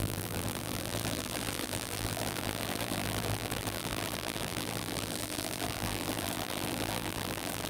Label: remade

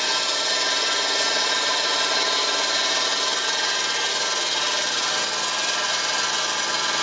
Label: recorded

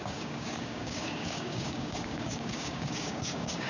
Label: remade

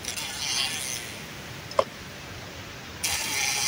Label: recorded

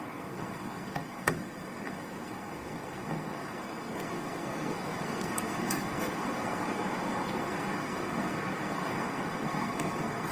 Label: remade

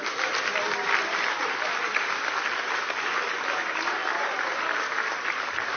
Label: recorded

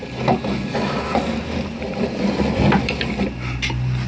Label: recorded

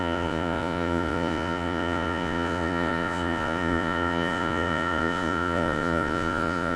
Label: remade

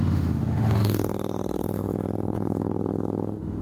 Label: remade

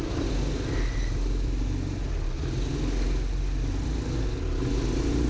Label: recorded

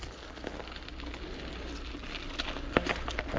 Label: recorded